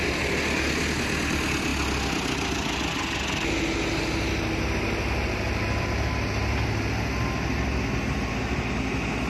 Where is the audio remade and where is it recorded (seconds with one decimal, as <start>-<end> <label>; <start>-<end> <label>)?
0.0-9.3 recorded

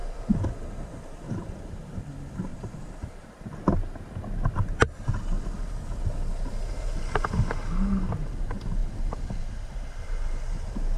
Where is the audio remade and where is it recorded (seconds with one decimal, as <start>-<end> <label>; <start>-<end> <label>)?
0.0-2.5 recorded; 2.5-3.4 remade; 3.4-11.0 recorded

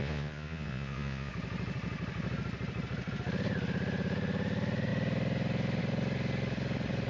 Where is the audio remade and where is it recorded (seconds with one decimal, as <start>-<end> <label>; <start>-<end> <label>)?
0.0-1.3 remade; 1.3-7.1 recorded

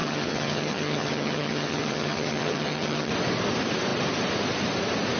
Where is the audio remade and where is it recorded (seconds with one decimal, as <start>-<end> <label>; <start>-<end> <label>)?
0.0-3.1 remade; 3.1-5.2 recorded